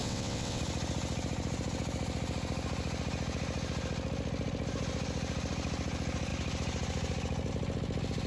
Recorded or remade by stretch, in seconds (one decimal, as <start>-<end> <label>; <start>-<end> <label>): 0.0-0.6 remade; 0.6-8.3 recorded